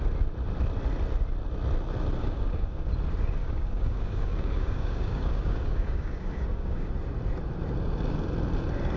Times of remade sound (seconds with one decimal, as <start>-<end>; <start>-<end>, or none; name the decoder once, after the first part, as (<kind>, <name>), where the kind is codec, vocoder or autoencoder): 2.2-2.9 (codec, DAC); 3.4-6.9